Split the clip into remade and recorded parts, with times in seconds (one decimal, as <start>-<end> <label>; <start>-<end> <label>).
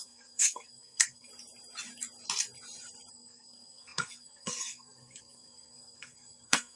0.0-1.3 remade; 1.3-3.1 recorded; 3.1-6.8 remade